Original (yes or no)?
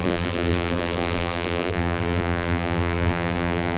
no